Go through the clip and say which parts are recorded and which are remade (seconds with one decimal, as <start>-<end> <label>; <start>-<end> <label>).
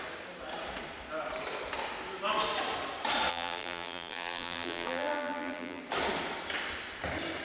0.0-3.3 recorded; 3.3-5.8 remade; 5.8-7.4 recorded